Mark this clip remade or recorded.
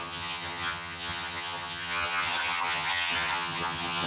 remade